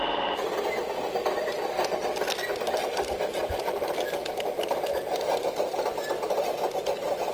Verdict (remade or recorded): recorded